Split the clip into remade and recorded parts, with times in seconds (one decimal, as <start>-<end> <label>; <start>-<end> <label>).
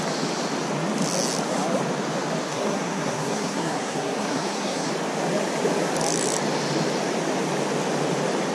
0.0-2.5 recorded; 2.5-4.9 remade; 4.9-8.5 recorded